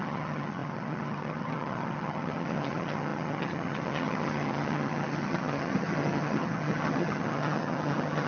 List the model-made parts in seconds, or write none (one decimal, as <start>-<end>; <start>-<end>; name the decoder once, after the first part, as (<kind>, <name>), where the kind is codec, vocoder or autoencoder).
0.0-8.3 (vocoder, HiFi-GAN)